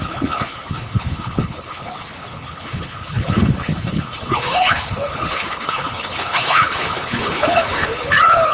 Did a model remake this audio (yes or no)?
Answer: yes